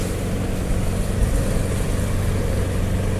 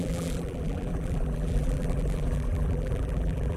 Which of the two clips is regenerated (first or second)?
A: second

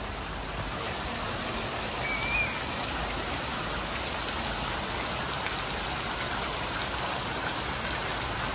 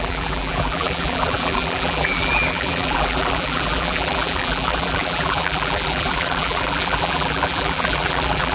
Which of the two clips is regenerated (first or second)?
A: second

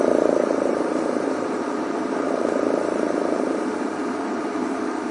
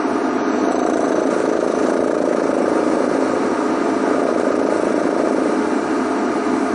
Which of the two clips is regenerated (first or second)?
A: first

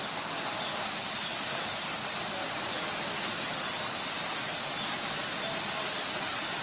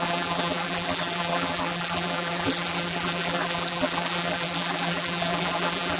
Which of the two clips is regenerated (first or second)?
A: second